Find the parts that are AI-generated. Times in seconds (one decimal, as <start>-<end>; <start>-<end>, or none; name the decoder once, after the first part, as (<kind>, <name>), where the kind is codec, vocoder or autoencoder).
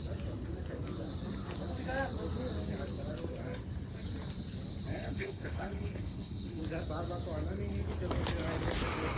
4.9-6.6 (codec, HILCodec)